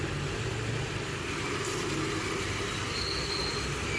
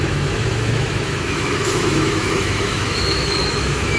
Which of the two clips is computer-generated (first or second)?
second